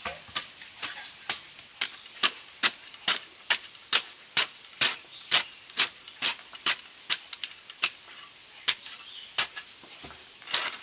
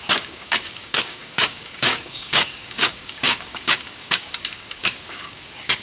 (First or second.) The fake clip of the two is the second